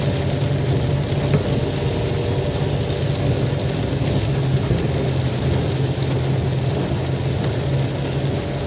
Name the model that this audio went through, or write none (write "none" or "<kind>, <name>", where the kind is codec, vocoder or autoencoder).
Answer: none